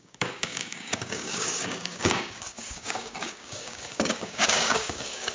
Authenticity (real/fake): fake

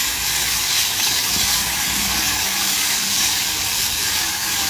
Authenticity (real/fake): fake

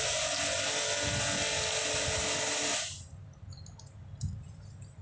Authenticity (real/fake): real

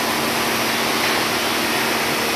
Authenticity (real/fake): real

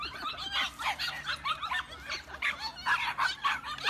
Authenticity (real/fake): real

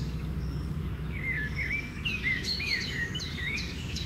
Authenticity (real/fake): fake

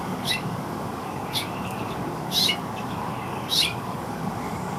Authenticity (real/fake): fake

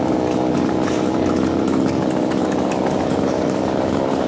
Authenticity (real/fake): fake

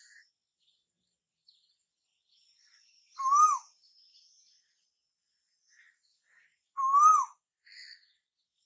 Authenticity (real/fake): real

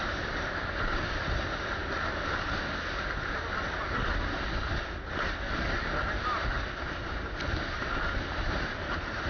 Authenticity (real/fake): real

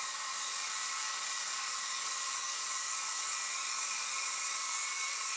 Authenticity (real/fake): fake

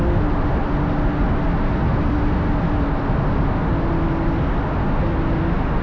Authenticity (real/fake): real